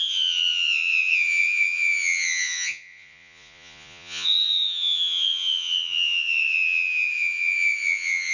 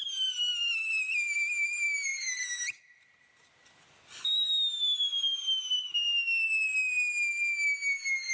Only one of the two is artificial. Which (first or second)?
first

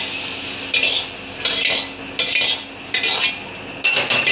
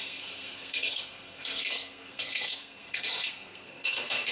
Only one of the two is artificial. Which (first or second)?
second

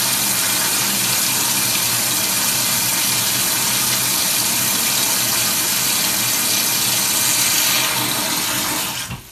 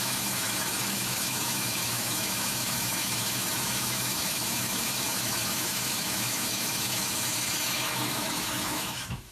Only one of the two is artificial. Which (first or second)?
second